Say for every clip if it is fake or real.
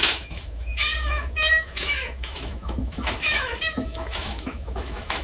fake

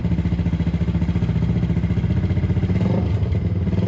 real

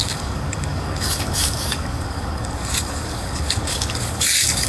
fake